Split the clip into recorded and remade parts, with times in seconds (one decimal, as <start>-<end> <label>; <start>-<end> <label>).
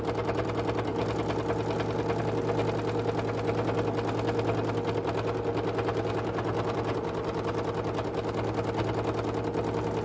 0.0-10.0 recorded